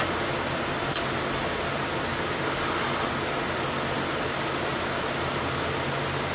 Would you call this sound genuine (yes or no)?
yes